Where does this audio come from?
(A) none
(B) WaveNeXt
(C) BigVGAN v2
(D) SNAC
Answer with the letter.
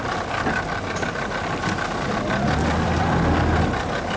A